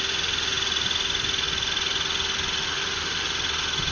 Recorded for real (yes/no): yes